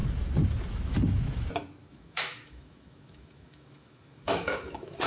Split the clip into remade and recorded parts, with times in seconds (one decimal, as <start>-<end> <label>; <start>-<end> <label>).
0.0-1.9 recorded; 1.9-5.1 remade